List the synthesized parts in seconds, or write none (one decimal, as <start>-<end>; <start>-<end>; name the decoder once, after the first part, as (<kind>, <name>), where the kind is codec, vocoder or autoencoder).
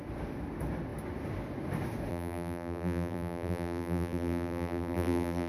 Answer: 2.1-5.5 (vocoder, BigVGAN v2)